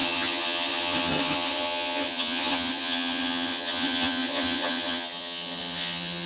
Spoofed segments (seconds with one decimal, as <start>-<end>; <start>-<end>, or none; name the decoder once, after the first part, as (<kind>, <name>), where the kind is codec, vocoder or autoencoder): 0.0-6.3 (vocoder, HiFi-GAN)